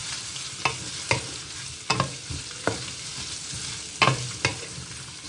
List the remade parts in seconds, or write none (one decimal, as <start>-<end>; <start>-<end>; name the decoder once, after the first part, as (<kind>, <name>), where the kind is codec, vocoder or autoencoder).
none